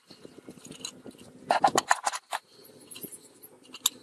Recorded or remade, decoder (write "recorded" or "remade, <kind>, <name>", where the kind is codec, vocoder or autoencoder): recorded